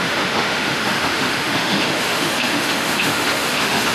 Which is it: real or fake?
fake